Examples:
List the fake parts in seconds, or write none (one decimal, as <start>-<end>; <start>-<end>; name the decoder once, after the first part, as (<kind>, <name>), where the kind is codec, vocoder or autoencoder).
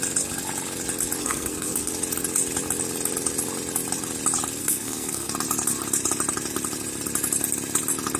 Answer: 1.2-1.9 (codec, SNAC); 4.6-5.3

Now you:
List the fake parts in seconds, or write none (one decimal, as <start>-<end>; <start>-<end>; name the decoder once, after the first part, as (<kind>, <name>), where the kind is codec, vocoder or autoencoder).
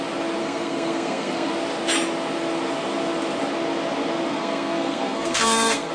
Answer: 0.4-1.5 (codec, SNAC); 4.3-5.9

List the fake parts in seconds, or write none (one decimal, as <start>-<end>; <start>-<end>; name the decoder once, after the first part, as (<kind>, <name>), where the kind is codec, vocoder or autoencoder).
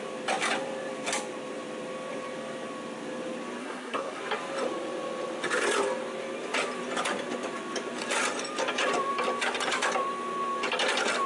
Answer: 3.6-4.2 (codec, SNAC)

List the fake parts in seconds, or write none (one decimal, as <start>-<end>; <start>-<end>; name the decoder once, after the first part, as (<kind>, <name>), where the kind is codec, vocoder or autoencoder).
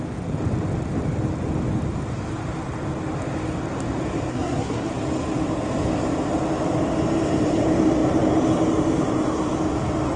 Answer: 4.3-4.9 (codec, SNAC)